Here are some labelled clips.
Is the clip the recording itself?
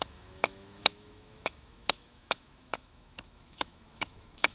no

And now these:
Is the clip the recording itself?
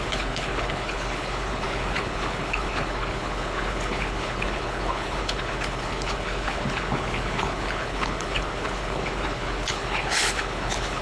no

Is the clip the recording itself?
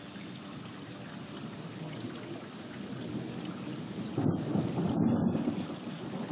yes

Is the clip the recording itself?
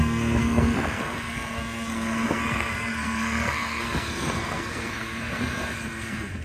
no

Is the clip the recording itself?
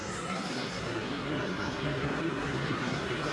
no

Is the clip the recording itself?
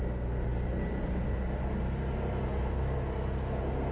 yes